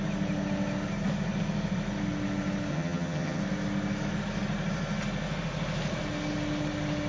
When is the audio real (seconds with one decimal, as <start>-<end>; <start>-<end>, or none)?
0.0-2.7; 3.4-7.1